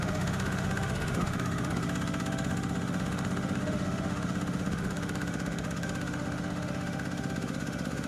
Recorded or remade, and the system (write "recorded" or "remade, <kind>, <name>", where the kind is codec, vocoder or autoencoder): remade, autoencoder, DAC-VAE